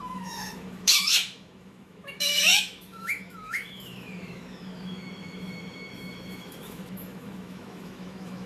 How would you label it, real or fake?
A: fake